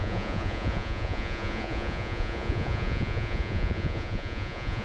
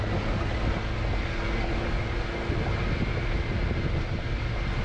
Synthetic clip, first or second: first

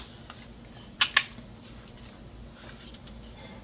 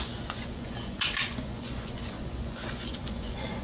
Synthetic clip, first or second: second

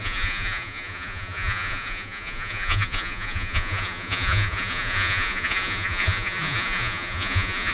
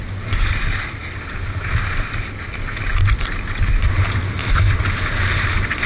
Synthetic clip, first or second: first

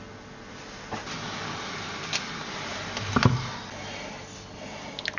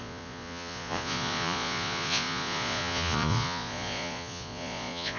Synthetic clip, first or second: second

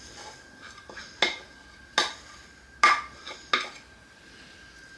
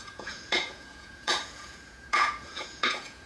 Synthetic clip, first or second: second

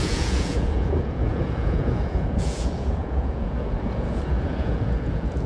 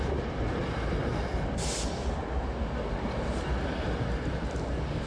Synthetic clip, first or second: first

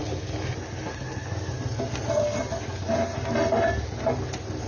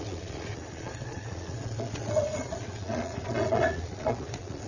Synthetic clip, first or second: second